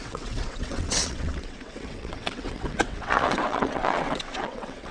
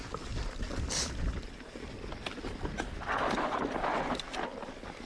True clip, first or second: second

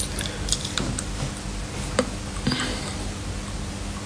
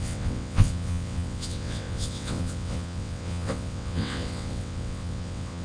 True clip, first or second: first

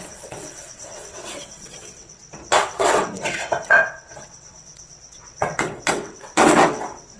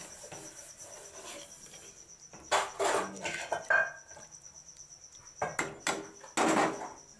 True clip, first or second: second